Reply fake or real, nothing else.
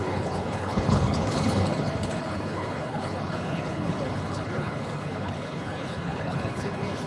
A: fake